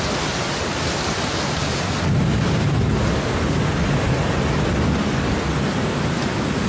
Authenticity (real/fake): real